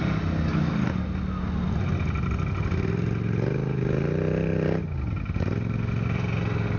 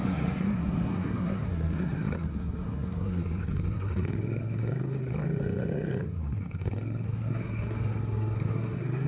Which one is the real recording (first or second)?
first